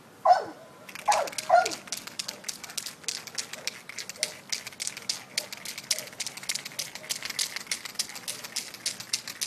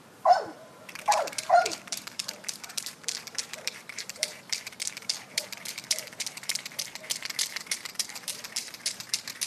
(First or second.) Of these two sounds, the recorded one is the first